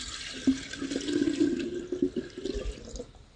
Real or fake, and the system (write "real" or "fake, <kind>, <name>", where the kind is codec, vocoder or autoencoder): real